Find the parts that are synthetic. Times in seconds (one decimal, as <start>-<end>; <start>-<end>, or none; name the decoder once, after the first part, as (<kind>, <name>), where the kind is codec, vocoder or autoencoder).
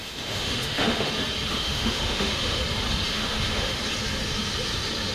0.0-1.1 (autoencoder, DAC-VAE); 1.5-2.6; 3.1-3.8